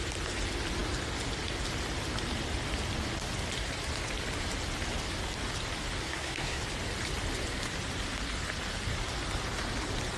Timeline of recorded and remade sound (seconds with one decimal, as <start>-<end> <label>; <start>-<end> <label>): 0.0-6.1 recorded; 6.1-6.6 remade; 6.6-10.2 recorded